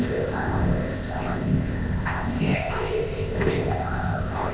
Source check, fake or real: fake